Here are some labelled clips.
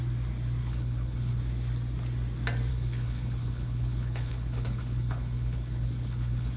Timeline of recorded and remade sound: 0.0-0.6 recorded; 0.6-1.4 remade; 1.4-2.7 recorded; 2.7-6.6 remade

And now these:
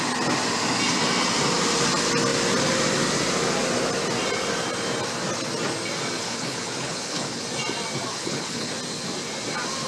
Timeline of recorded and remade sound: 0.0-6.2 recorded; 6.2-7.4 remade; 7.4-8.1 recorded; 8.1-8.7 remade; 8.7-9.9 recorded

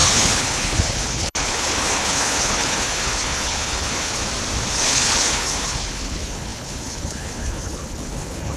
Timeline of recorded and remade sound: 0.0-4.2 remade; 4.2-4.7 recorded; 4.7-8.6 remade

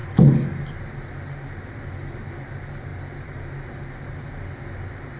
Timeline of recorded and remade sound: 0.0-5.2 recorded

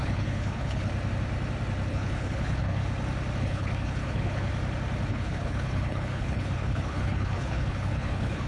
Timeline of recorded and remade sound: 0.0-0.9 remade; 0.9-1.9 recorded; 1.9-2.8 remade; 2.8-3.4 recorded; 3.4-4.5 remade; 4.5-5.1 recorded; 5.1-8.5 remade

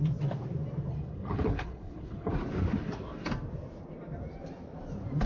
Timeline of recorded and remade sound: 0.0-0.9 recorded; 0.9-2.3 remade; 2.3-5.3 recorded

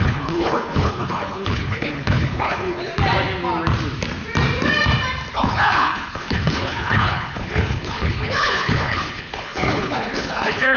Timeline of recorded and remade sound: 0.0-2.9 remade; 2.9-5.3 recorded; 5.3-10.8 remade